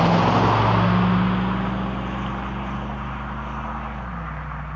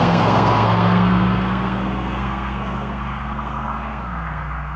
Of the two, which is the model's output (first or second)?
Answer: second